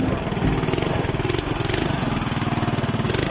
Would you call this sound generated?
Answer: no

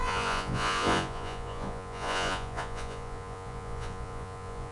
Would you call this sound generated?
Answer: yes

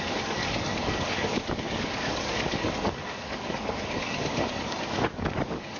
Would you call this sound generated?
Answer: yes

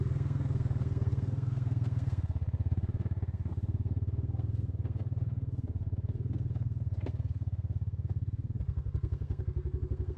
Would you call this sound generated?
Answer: yes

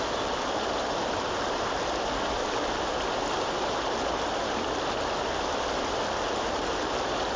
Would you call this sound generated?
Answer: no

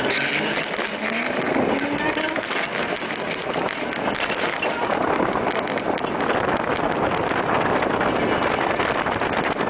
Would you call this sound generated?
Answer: no